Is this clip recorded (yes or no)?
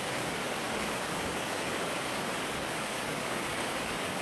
no